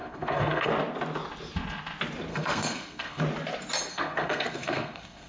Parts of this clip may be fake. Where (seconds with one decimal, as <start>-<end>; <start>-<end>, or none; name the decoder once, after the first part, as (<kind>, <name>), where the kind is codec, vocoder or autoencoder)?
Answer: 0.0-0.7 (codec, SNAC); 2.3-3.2; 3.9-5.3